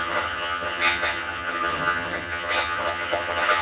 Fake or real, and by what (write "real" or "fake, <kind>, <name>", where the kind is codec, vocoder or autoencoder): fake, vocoder, HiFi-GAN